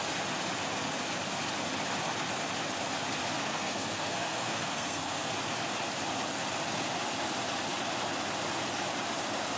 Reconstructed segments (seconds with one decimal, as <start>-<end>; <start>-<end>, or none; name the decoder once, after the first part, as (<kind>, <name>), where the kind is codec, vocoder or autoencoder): 3.4-5.3 (codec, SNAC)